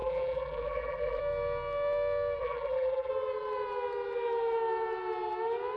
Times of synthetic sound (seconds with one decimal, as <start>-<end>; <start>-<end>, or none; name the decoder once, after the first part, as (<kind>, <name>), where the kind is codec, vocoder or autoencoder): 0.0-1.2 (vocoder, BigVGAN v2); 2.4-3.1